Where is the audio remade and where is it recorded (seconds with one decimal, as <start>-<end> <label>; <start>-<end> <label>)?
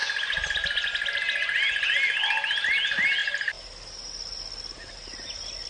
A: 0.0-5.7 recorded